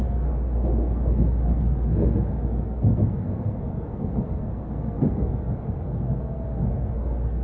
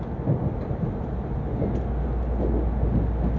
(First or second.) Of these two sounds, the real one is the second